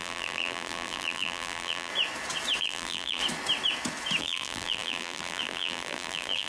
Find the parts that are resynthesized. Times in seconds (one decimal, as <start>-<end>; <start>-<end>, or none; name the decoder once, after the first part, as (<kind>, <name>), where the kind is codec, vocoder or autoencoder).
0.0-1.9 (vocoder, BigVGAN v2); 2.6-3.2; 4.2-6.5